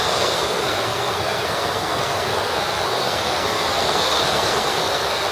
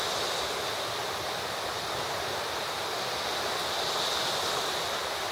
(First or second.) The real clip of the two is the second